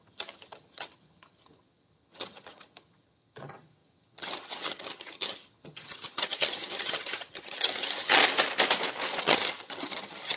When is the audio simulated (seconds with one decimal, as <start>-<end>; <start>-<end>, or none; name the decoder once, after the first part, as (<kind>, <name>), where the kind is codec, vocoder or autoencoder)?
0.0-8.2 (vocoder, HiFi-GAN); 9.2-10.4